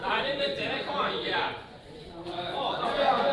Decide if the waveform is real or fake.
fake